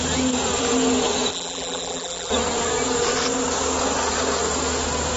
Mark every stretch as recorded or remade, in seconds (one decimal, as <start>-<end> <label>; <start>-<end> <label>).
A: 0.0-1.3 recorded; 1.3-2.3 remade; 2.3-5.2 recorded